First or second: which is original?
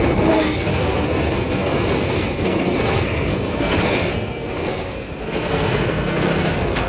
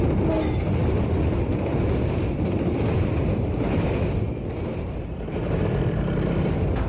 second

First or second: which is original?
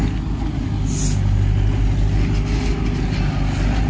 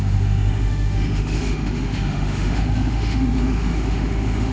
first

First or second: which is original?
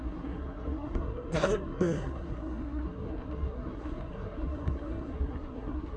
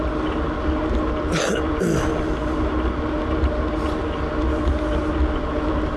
second